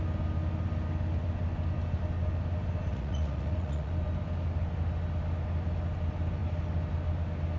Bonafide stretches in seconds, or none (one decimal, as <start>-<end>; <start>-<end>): 0.0-2.9; 3.9-7.6